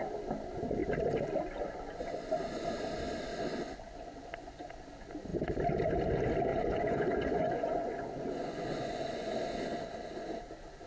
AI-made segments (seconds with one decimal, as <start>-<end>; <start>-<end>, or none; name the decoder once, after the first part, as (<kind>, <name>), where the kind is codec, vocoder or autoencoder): 3.3-4.7 (vocoder, Vocos); 6.5-9.3